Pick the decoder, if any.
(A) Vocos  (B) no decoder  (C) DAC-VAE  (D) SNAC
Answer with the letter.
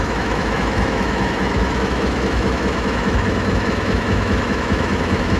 C